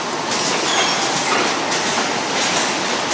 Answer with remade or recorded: recorded